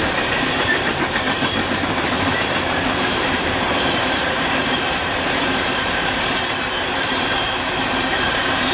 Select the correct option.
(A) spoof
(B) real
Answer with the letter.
A